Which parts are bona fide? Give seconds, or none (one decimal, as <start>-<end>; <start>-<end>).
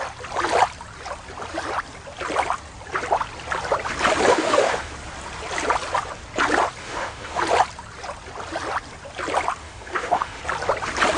0.0-4.3; 4.9-6.8; 7.4-9.6; 10.4-11.2